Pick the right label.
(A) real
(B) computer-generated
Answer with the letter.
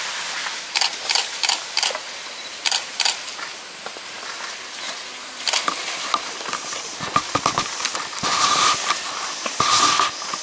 A